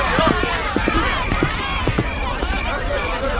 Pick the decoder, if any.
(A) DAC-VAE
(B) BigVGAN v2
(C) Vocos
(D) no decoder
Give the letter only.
B